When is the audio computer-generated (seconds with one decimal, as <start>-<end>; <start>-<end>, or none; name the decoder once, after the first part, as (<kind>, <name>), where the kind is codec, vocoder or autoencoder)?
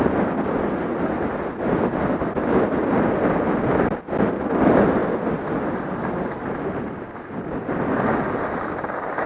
none